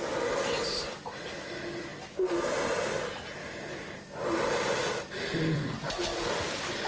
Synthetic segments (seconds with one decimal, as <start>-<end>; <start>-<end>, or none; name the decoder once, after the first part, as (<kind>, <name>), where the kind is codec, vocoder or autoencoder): 3.4-6.0 (vocoder, BigVGAN v2)